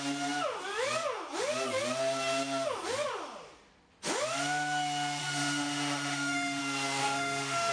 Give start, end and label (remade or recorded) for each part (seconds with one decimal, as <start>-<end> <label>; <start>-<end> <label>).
0.0-5.2 recorded; 5.2-6.6 remade; 6.6-7.0 recorded; 7.0-7.7 remade